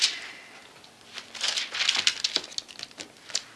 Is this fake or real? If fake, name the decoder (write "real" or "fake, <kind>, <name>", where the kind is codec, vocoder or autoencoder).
real